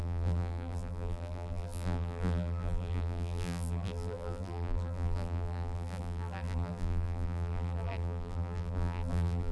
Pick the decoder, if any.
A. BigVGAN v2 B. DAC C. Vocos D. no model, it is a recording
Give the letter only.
A